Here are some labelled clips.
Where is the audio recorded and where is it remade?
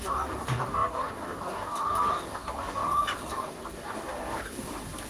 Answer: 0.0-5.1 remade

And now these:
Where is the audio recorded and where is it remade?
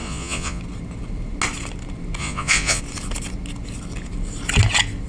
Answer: 0.0-0.6 remade; 0.6-2.2 recorded; 2.2-2.8 remade; 2.8-5.1 recorded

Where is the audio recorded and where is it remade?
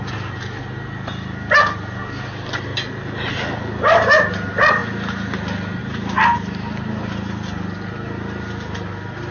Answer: 0.0-9.3 recorded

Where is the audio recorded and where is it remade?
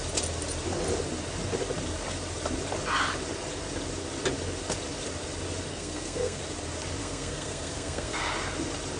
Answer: 0.0-5.7 recorded; 5.7-6.4 remade; 6.4-7.0 recorded; 7.0-8.2 remade; 8.2-9.0 recorded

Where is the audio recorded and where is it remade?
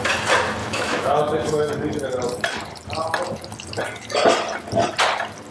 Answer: 0.0-0.6 recorded; 0.6-1.7 remade; 1.7-5.5 recorded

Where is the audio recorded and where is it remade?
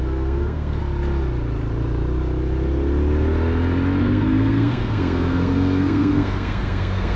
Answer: 0.0-0.8 remade; 0.8-4.0 recorded; 4.0-7.2 remade